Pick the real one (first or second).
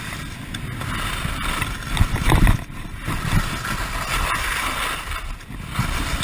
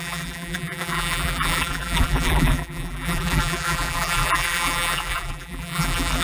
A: first